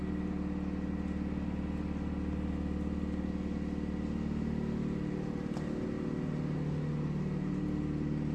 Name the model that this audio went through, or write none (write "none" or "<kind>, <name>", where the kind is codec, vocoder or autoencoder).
none